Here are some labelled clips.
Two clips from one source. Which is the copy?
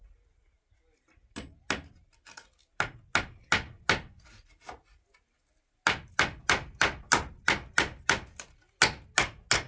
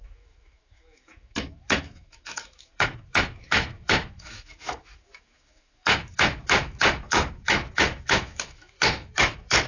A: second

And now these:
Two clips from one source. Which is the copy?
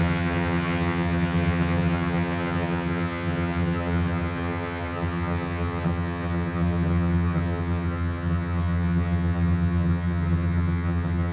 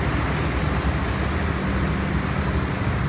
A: first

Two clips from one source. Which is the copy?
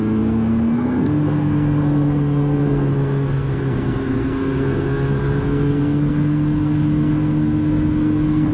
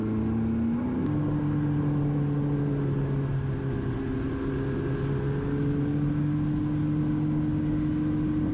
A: first